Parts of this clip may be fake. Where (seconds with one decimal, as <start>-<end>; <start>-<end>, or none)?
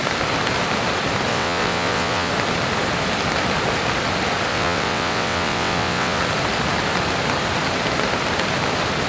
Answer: 1.3-2.3; 4.5-6.2